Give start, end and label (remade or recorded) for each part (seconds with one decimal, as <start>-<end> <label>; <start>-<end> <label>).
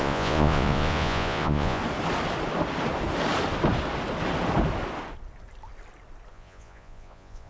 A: 0.0-1.8 remade; 1.8-6.3 recorded; 6.3-7.5 remade